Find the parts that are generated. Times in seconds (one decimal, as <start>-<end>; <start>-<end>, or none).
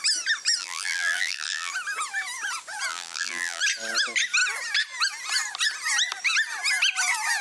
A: 0.6-1.7; 2.9-3.6